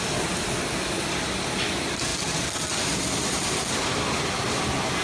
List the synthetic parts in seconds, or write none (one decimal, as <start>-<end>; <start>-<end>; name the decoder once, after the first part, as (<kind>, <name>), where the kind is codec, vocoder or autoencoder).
none